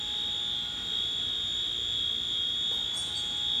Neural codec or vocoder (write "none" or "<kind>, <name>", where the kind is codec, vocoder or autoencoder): none